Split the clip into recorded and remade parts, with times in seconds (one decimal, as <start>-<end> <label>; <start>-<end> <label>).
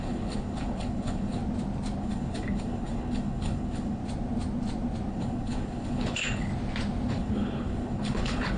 0.0-1.4 remade; 1.4-2.0 recorded; 2.0-4.0 remade; 4.0-5.1 recorded; 5.1-6.5 remade; 6.5-7.1 recorded; 7.1-8.6 remade